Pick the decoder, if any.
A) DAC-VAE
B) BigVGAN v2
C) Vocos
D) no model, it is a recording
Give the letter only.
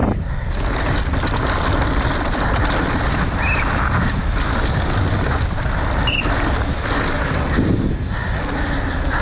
D